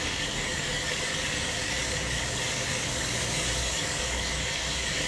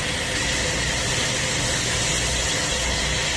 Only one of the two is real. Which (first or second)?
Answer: second